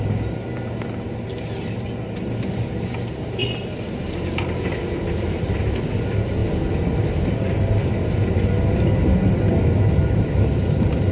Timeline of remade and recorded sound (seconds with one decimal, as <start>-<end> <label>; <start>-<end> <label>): 0.0-11.1 recorded